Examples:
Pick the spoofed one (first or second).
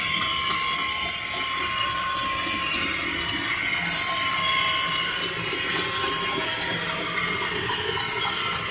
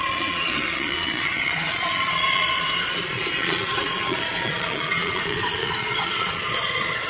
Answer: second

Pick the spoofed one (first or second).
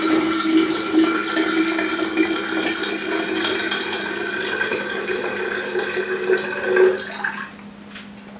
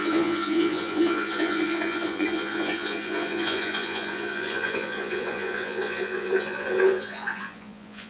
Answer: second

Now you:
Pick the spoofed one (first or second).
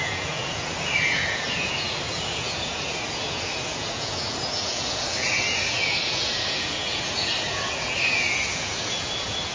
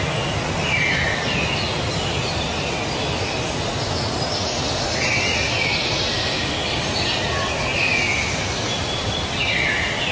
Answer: first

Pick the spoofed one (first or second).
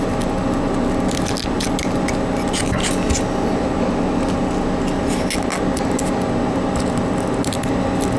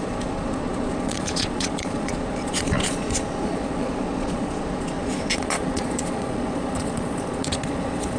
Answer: second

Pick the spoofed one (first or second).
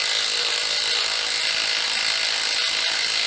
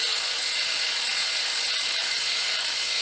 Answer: second